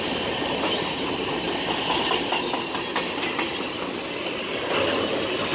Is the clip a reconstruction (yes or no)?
no